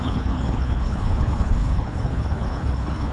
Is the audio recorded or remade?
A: remade